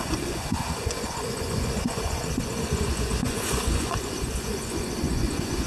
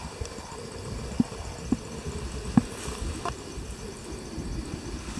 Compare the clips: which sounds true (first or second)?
second